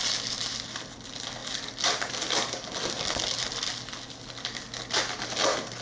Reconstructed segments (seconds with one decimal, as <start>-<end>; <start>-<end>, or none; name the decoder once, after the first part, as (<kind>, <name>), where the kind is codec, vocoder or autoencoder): none